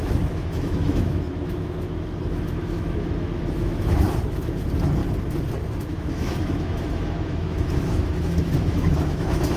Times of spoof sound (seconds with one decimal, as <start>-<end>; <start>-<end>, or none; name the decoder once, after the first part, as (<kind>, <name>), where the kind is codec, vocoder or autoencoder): 0.0-5.0 (autoencoder, DAC-VAE); 5.8-9.6